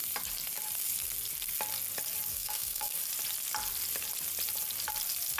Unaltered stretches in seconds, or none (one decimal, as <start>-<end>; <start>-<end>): 0.0-2.3; 3.0-5.4